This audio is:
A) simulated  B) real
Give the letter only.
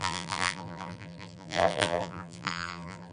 A